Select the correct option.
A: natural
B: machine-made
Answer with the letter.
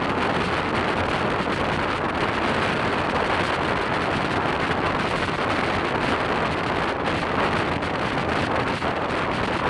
A